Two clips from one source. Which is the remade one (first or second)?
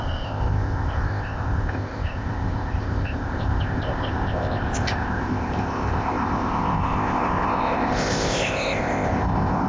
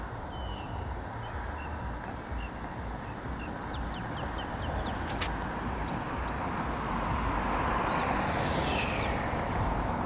first